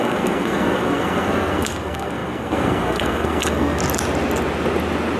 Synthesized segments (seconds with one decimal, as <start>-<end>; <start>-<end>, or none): 0.0-3.8